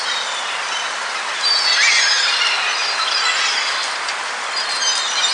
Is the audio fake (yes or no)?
no